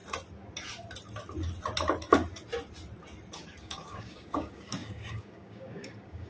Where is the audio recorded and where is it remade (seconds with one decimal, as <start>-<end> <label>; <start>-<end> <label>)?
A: 0.0-3.6 recorded; 3.6-6.3 remade